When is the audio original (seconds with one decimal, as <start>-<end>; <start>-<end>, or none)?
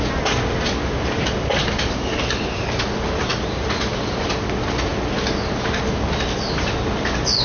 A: 0.0-7.4